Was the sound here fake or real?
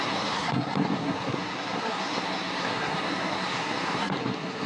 fake